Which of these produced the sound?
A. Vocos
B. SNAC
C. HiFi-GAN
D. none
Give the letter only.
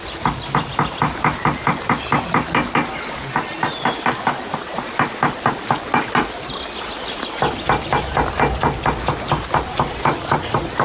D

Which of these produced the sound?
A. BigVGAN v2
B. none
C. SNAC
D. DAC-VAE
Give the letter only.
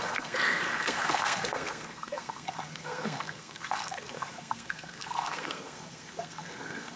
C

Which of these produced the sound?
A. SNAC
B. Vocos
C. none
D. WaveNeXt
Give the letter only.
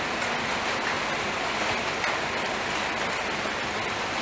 C